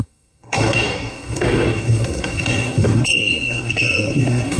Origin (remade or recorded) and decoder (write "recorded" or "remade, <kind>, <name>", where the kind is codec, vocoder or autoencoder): remade, codec, SNAC